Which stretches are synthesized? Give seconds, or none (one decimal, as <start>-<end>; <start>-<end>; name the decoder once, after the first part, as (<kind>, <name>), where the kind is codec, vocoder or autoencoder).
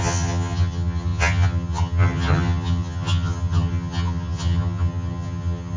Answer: 0.0-5.8 (vocoder, HiFi-GAN)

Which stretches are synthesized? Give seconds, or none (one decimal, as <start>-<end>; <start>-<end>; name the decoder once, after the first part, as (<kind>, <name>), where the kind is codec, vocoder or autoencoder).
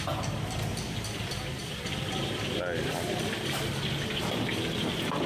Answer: none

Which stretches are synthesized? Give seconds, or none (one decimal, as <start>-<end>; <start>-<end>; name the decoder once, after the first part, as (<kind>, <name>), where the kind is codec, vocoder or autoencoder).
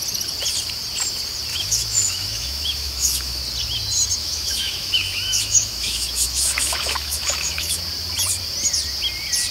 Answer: 1.5-3.4 (autoencoder, DAC-VAE); 4.2-7.8